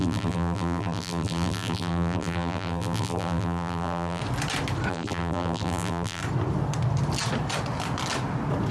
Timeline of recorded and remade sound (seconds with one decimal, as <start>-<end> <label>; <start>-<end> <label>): 0.0-4.2 remade; 4.2-4.9 recorded; 4.9-6.2 remade; 6.2-8.7 recorded